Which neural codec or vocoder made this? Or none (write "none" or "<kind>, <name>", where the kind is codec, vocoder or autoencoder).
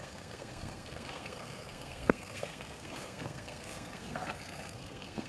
codec, SNAC